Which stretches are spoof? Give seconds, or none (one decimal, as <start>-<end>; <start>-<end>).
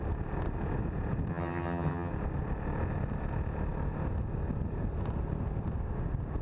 1.3-2.1